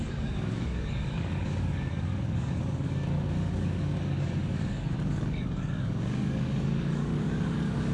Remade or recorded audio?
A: remade